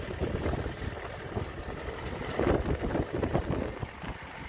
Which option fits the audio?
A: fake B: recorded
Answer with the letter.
B